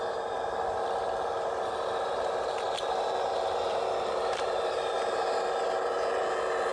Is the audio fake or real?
real